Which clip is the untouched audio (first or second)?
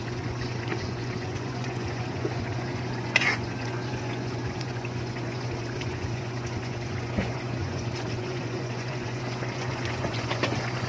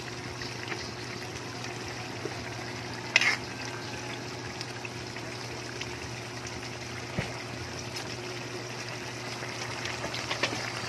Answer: second